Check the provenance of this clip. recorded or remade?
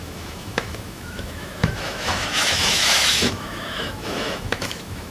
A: remade